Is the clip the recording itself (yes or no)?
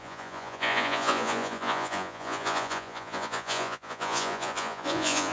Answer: no